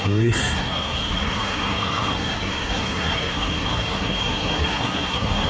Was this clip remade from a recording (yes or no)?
yes